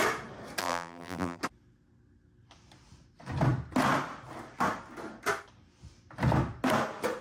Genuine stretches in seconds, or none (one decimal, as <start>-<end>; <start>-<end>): 0.0-0.6; 1.4-7.2